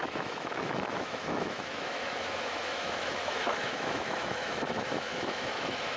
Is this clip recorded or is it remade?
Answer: remade